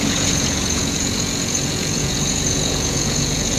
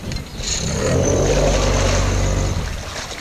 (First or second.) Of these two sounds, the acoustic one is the second